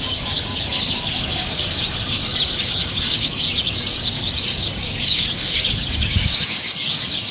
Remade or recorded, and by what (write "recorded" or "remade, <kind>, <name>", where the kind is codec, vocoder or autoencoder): remade, codec, DAC